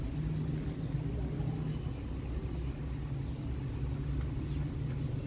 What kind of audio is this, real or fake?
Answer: real